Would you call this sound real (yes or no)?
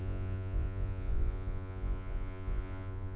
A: no